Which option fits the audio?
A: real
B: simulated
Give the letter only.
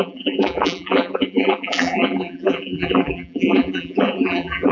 B